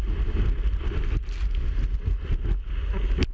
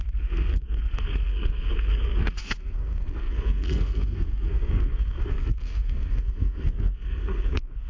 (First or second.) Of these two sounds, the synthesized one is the second